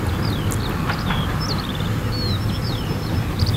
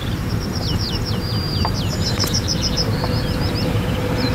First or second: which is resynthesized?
second